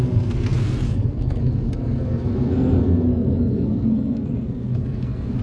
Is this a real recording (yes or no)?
no